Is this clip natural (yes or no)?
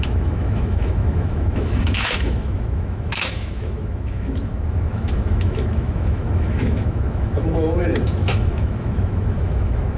no